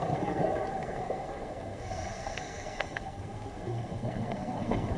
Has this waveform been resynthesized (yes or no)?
yes